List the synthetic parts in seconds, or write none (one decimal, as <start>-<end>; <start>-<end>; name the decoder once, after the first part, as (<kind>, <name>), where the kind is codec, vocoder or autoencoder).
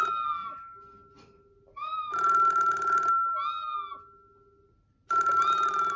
none